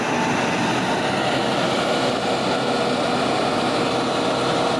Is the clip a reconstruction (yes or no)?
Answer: no